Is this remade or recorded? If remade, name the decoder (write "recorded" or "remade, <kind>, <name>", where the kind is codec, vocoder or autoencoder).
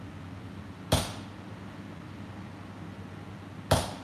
recorded